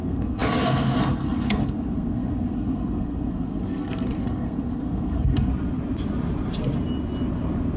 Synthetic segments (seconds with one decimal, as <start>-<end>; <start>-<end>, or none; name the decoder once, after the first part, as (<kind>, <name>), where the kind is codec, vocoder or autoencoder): 0.0-5.5 (codec, SNAC)